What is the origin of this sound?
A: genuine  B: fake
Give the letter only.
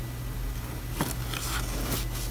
A